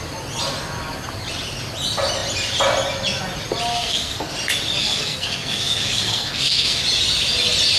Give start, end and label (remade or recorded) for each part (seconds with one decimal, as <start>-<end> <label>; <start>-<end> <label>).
0.0-3.7 recorded; 3.7-4.3 remade; 4.3-4.8 recorded; 4.8-6.8 remade; 6.8-7.8 recorded